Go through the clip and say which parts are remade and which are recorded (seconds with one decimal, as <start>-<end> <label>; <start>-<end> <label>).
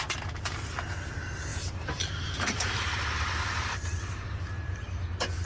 0.0-1.5 recorded; 1.5-4.8 remade; 4.8-5.5 recorded